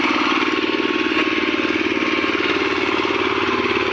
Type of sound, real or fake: real